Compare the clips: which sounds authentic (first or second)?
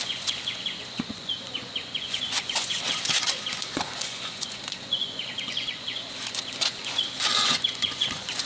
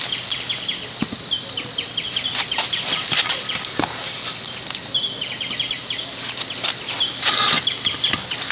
second